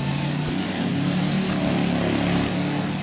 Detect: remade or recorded recorded